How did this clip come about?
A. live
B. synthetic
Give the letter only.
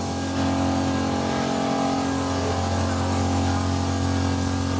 A